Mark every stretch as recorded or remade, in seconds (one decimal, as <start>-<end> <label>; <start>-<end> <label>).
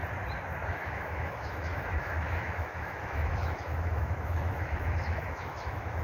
0.0-0.7 recorded; 0.7-6.0 remade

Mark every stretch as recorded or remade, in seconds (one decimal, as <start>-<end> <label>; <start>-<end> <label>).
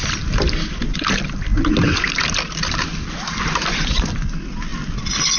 0.0-5.4 recorded